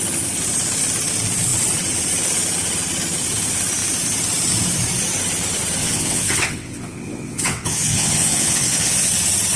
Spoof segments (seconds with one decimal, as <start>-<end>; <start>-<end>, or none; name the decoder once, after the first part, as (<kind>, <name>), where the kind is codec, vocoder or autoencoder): 5.8-9.1 (vocoder, WaveNeXt)